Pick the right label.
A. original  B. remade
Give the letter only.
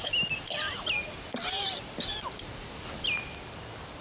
A